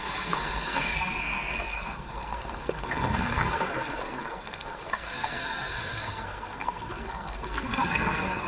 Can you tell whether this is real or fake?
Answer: fake